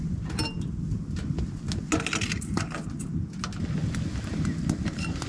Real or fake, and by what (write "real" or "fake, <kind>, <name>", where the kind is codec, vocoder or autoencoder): real